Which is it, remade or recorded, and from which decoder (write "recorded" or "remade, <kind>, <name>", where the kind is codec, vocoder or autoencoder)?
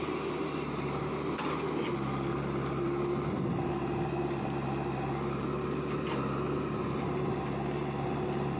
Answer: recorded